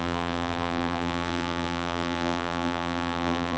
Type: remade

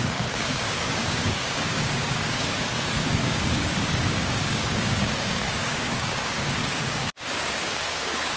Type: remade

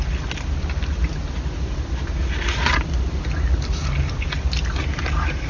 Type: recorded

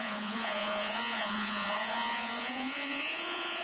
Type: remade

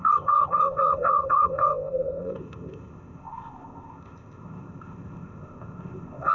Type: remade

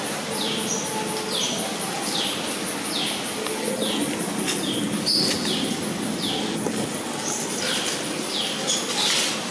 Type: recorded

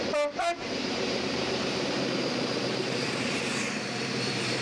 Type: remade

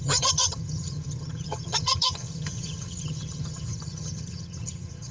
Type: remade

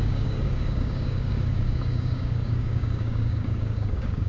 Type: remade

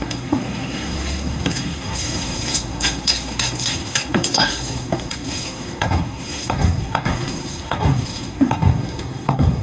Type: remade